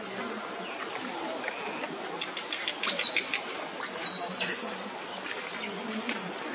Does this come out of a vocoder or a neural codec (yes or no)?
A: no